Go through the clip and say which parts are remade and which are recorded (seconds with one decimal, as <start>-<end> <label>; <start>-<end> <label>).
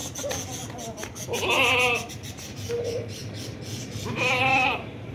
0.0-2.1 recorded; 2.1-3.2 remade; 3.2-3.9 recorded; 3.9-5.1 remade